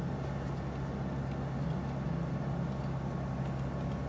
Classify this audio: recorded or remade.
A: recorded